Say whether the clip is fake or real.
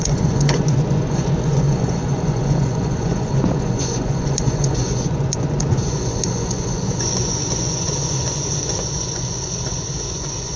fake